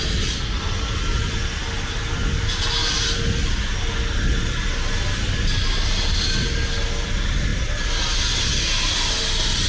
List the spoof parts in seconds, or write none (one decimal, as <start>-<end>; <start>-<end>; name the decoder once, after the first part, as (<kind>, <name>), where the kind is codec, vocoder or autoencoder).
none